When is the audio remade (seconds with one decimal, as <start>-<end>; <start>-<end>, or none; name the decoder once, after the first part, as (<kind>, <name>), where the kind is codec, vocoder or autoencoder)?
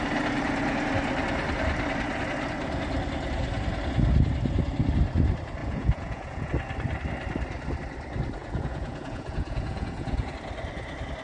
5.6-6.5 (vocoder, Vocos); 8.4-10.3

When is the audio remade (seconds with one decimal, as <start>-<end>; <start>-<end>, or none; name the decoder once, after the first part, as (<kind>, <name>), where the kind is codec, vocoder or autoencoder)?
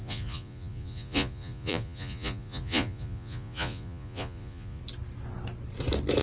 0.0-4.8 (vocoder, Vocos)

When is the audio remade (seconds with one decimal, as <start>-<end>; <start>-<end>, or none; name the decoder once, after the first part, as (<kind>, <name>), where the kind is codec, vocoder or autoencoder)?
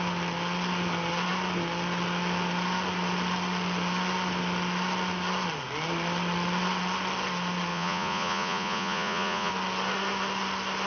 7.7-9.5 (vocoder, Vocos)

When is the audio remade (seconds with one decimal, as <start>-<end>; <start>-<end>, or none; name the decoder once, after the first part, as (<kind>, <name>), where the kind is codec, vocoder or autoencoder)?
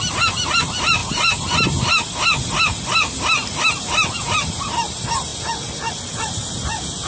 none